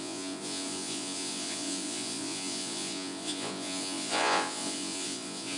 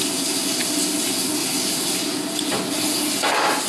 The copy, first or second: first